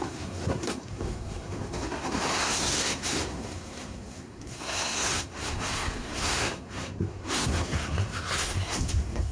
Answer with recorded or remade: remade